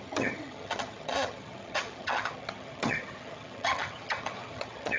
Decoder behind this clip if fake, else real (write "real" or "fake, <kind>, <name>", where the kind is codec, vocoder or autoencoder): fake, vocoder, HiFi-GAN